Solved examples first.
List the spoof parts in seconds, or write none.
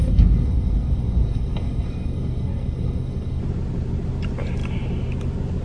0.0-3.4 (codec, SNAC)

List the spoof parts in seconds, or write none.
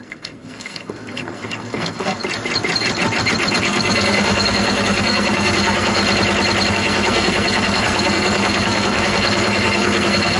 0.0-2.2 (codec, SNAC); 3.6-6.0; 6.7-10.4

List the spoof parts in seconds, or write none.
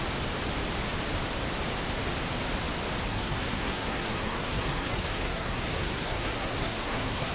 3.1-7.3 (codec, SNAC)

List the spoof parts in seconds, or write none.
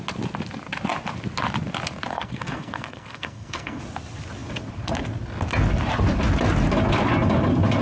2.1-3.8 (codec, SNAC)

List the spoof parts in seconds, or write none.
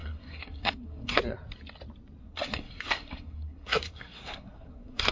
0.0-1.2 (codec, SNAC); 2.2-5.1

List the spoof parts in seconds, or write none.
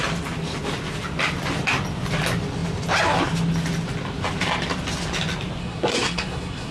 5.6-6.7 (codec, SNAC)